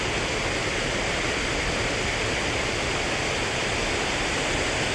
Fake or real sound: real